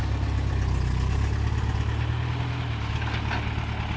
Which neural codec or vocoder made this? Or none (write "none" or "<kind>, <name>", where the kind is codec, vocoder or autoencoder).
none